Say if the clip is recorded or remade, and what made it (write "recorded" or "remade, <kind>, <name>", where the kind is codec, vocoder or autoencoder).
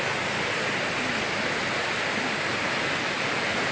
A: recorded